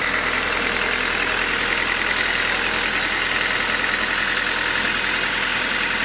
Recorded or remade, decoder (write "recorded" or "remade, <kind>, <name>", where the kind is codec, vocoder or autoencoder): recorded